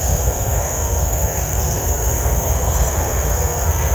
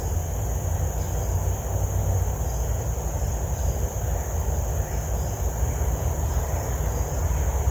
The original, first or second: second